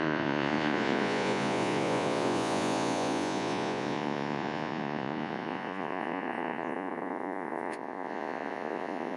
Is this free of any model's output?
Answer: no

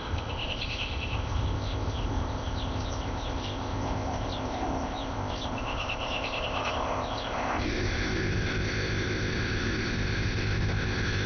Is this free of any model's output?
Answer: no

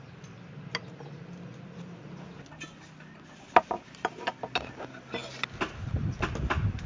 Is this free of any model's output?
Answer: yes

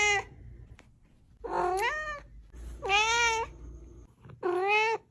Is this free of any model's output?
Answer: yes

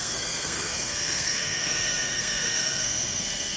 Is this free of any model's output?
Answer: no